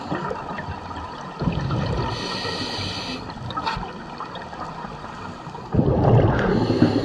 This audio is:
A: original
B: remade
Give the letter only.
A